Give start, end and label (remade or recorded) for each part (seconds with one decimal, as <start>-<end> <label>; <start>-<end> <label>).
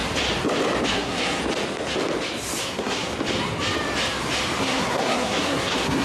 0.0-0.9 recorded; 0.9-1.4 remade; 1.4-2.6 recorded; 2.6-3.1 remade; 3.1-4.6 recorded; 4.6-6.0 remade